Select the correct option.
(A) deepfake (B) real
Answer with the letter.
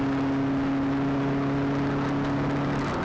B